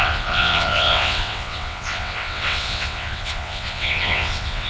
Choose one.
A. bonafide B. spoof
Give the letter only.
B